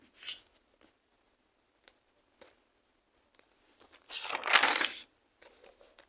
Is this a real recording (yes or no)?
yes